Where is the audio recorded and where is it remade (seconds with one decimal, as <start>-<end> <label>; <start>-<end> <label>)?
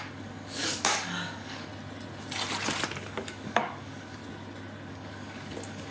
0.0-1.7 remade; 1.7-3.0 recorded; 3.0-4.2 remade; 4.2-4.9 recorded; 4.9-5.9 remade